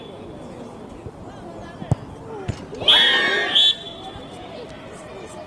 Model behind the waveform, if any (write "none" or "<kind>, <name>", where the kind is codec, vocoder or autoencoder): none